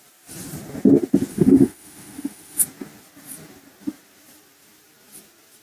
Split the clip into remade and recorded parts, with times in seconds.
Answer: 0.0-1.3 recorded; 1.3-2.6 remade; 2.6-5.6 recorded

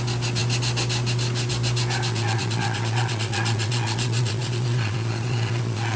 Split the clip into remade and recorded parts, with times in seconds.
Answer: 0.0-2.1 recorded; 2.1-6.0 remade

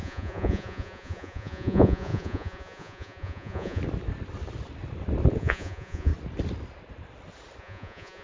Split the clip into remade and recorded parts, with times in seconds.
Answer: 0.0-3.8 remade; 3.8-5.4 recorded; 5.4-6.1 remade; 6.1-7.6 recorded; 7.6-8.2 remade

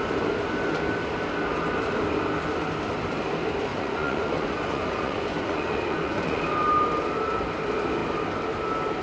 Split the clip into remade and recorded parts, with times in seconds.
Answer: 0.0-3.7 recorded; 3.7-6.4 remade; 6.4-9.0 recorded

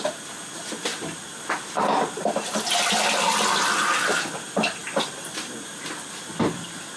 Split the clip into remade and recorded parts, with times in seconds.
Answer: 0.0-7.0 recorded

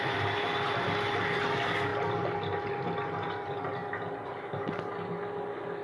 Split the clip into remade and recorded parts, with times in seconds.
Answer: 0.0-5.8 recorded

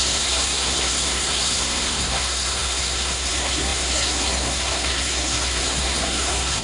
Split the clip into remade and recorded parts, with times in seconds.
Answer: 0.0-6.6 remade